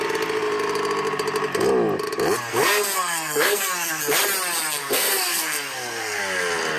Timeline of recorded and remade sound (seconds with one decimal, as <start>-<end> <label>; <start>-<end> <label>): 0.0-2.5 recorded; 2.5-4.0 remade; 4.0-4.8 recorded; 4.8-6.2 remade; 6.2-6.8 recorded